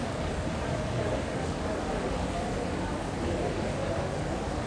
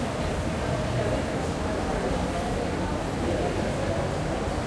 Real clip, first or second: second